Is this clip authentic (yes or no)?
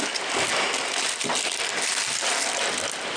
yes